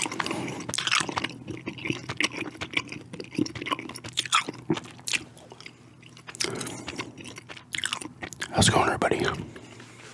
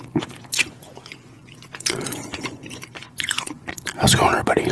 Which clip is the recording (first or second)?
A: first